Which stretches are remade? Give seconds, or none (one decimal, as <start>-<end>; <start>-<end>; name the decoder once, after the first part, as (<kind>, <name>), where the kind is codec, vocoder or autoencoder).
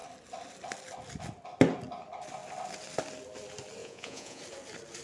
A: 3.8-4.4 (vocoder, Vocos)